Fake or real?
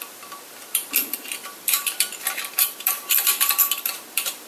fake